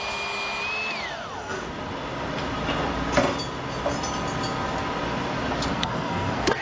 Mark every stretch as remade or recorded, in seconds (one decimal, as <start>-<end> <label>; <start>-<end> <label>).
0.0-5.7 recorded; 5.7-6.6 remade